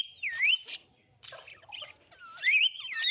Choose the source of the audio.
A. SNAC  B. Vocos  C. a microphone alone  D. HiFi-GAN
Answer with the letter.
C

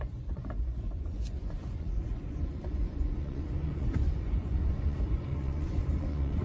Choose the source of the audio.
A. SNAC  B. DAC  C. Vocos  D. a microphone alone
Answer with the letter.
C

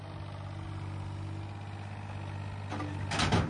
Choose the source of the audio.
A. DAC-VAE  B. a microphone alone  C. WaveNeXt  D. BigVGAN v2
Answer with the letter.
B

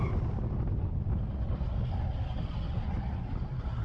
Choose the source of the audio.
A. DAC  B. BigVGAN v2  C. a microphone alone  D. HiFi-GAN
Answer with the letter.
C